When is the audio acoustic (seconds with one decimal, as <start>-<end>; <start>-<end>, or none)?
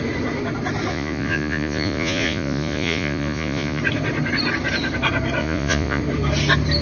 0.0-0.9; 3.8-5.4; 6.0-6.8